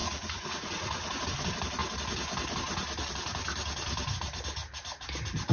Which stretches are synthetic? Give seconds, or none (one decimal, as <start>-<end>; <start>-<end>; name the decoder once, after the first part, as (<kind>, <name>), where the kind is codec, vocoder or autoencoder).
0.0-1.2 (vocoder, Vocos)

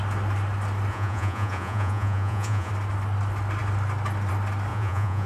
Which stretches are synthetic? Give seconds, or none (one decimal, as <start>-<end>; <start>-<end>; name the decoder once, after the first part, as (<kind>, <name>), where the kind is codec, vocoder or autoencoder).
0.9-2.7 (vocoder, Vocos); 4.7-5.3